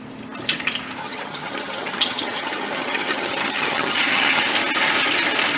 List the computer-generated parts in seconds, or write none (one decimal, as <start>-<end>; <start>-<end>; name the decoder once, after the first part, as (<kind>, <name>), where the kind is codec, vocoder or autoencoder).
1.0-4.4 (vocoder, HiFi-GAN)